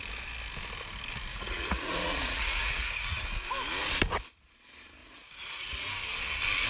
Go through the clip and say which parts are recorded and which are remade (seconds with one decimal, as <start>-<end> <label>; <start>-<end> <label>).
0.0-1.3 recorded; 1.3-3.2 remade; 3.2-5.0 recorded; 5.0-5.9 remade; 5.9-6.7 recorded